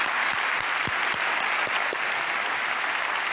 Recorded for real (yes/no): yes